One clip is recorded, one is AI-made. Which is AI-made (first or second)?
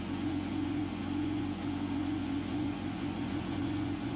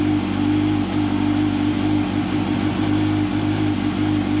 first